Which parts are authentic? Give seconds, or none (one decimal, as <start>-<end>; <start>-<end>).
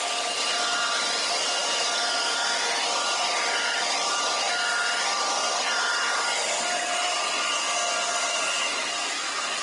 0.0-9.6